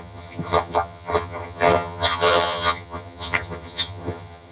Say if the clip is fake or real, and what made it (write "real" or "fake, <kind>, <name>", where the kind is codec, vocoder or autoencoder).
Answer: fake, vocoder, HiFi-GAN